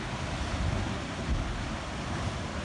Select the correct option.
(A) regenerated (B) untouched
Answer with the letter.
B